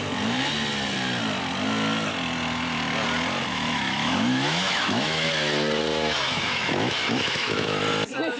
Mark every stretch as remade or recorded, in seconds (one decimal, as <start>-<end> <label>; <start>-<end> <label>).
0.0-3.5 recorded; 3.5-5.3 remade; 5.3-5.9 recorded; 5.9-7.8 remade; 7.8-8.4 recorded